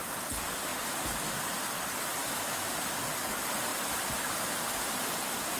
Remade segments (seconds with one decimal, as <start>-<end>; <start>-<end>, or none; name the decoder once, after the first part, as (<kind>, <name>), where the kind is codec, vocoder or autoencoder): 2.2-2.7 (autoencoder, DAC-VAE)